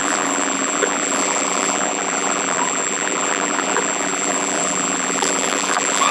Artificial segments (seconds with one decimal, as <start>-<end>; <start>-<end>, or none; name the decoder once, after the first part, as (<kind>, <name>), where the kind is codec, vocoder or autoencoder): 0.0-6.1 (vocoder, BigVGAN v2)